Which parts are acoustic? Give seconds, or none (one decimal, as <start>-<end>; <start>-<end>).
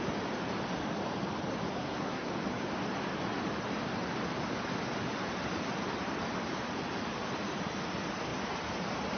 0.0-1.8; 2.3-9.2